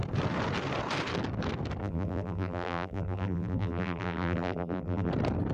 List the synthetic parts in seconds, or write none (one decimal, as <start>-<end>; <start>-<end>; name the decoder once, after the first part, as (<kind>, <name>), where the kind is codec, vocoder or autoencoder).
1.8-5.1 (vocoder, BigVGAN v2)